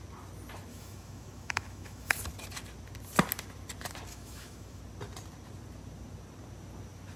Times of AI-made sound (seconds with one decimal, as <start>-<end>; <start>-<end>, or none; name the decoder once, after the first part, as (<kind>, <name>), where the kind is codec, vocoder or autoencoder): 0.7-2.2 (autoencoder, DAC-VAE); 4.1-4.8